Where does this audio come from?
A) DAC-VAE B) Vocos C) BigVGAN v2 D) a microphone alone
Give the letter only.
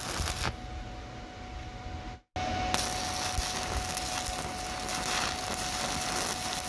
D